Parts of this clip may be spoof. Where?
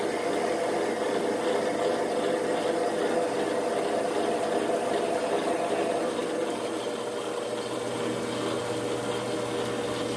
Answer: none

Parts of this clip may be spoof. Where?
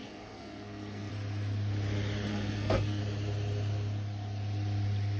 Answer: 0.0-1.1 (codec, SNAC); 2.3-3.0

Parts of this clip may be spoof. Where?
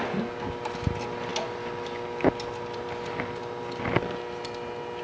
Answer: none